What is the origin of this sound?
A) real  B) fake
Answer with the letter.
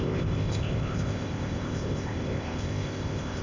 B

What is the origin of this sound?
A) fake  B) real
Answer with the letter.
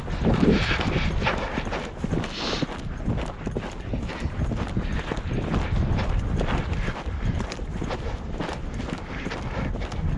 B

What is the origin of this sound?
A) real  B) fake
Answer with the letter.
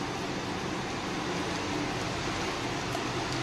A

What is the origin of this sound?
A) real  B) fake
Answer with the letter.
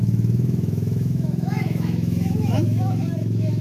B